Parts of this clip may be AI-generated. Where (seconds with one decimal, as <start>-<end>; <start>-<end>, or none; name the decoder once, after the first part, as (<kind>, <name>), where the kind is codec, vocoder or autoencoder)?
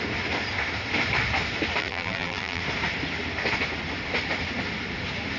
1.8-2.6 (vocoder, BigVGAN v2)